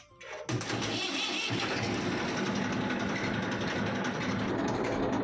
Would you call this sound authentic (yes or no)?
yes